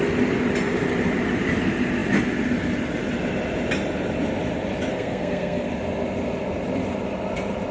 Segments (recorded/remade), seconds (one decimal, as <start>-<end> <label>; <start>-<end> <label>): 0.0-4.9 recorded; 4.9-5.7 remade; 5.7-7.7 recorded